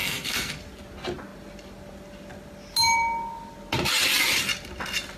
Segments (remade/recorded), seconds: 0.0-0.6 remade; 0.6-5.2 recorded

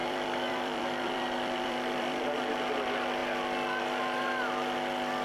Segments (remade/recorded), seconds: 0.0-2.5 remade; 2.5-5.2 recorded

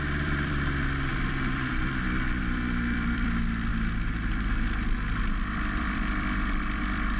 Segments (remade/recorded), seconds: 0.0-3.7 remade; 3.7-5.5 recorded; 5.5-7.2 remade

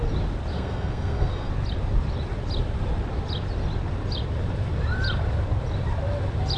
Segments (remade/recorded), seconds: 0.0-0.5 recorded; 0.5-1.5 remade; 1.5-6.6 recorded